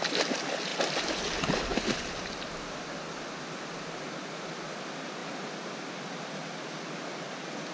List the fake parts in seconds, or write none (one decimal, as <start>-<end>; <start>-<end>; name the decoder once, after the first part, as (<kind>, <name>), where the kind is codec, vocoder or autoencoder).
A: none